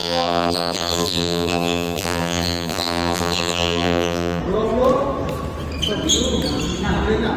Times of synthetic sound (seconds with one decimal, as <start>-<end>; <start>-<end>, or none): 0.0-4.4